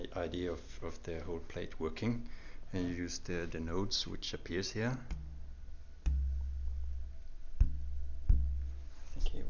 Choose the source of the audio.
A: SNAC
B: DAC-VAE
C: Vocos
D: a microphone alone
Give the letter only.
D